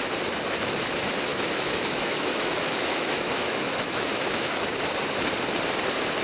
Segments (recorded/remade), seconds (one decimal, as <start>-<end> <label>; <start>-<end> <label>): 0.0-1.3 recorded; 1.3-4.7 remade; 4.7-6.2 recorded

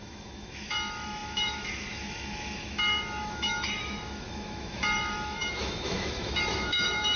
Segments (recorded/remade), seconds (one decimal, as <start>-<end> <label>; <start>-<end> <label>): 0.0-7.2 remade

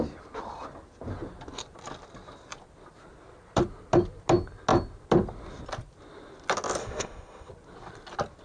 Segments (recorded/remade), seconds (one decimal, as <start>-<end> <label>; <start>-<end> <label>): 0.0-6.8 recorded; 6.8-7.5 remade; 7.5-8.4 recorded

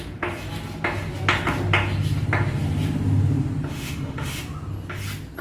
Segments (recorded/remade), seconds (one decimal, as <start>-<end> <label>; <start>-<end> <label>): 0.0-3.7 recorded; 3.7-4.4 remade; 4.4-5.4 recorded

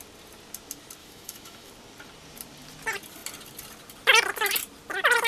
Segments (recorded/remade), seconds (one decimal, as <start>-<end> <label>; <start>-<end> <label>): 0.0-1.0 recorded; 1.0-1.7 remade; 1.7-5.3 recorded

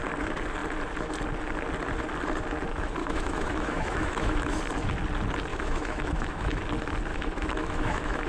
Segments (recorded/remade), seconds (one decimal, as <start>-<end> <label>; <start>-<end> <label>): 0.0-3.0 recorded; 3.0-4.6 remade; 4.6-5.5 recorded; 5.5-6.6 remade; 6.6-7.1 recorded; 7.1-8.3 remade

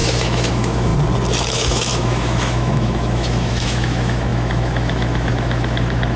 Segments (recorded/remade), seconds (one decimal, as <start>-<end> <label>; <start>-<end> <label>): 0.0-0.9 remade; 0.9-1.5 recorded; 1.5-6.2 remade